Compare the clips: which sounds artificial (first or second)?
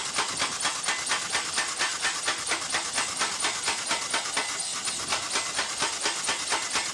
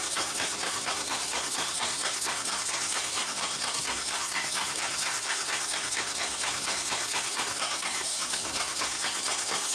second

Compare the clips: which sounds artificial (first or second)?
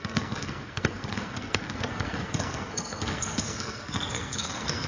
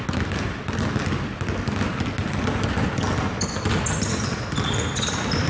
first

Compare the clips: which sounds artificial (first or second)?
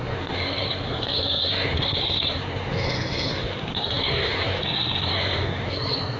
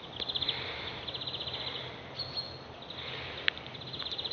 first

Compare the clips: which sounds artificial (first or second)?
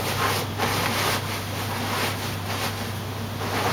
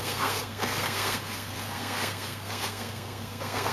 second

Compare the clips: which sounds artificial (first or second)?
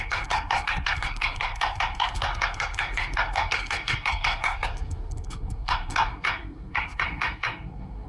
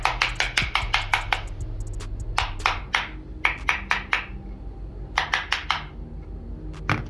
first